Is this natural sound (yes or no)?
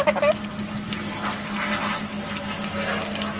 yes